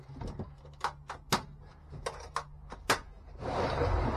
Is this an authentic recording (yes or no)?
yes